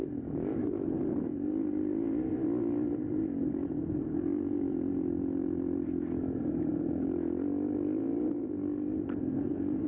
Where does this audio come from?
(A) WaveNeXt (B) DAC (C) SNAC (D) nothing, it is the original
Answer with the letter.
D